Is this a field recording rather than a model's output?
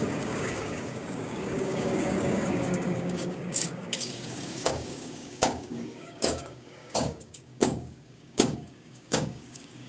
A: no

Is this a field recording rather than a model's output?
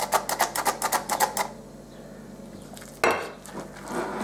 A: yes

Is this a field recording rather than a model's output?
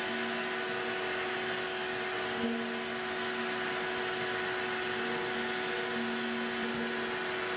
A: yes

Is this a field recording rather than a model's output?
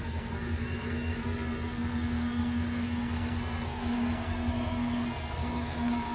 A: no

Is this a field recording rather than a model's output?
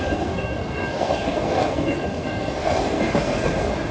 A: no